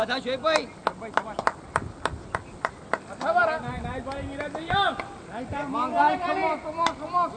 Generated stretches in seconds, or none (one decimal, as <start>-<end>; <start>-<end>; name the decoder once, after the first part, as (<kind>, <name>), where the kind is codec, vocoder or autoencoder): none